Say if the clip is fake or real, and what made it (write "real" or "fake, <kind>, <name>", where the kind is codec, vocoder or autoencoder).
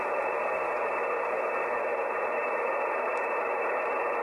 fake, vocoder, BigVGAN v2